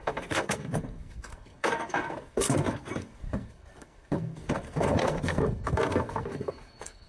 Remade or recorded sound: remade